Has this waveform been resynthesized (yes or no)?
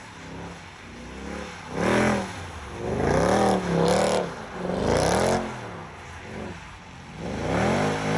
no